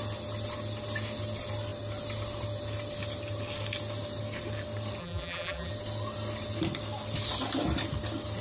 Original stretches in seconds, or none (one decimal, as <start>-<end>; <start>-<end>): 0.0-5.0; 5.7-8.4